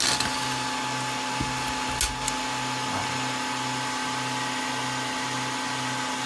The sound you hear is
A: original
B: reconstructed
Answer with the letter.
A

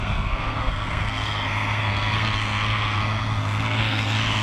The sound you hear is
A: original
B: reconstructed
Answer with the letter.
B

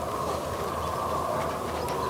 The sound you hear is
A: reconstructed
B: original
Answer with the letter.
B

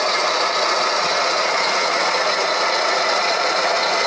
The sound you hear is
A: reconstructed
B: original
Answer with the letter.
A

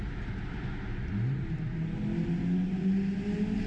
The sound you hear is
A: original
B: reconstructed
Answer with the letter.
A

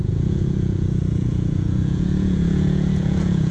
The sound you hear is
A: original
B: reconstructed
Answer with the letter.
B